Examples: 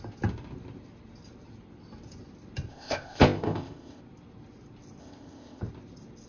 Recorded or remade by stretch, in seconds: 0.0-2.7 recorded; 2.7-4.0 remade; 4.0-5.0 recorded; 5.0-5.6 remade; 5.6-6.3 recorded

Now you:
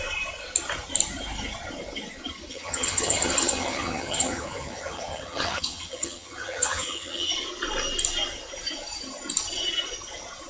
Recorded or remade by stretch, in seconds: 0.0-2.5 recorded; 2.5-7.3 remade; 7.3-10.5 recorded

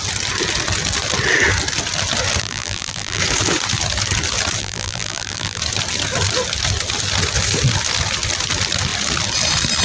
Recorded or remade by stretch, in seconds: 0.0-2.4 recorded; 2.4-3.2 remade; 3.2-4.6 recorded; 4.6-5.6 remade; 5.6-9.8 recorded

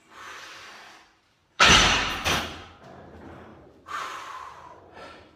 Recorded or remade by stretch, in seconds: 0.0-1.4 recorded; 1.4-2.4 remade; 2.4-3.5 recorded; 3.5-4.8 remade; 4.8-5.4 recorded